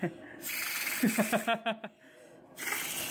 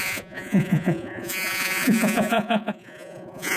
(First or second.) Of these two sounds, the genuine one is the first